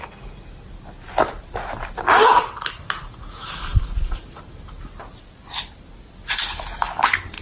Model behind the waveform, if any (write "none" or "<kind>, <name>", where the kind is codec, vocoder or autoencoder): none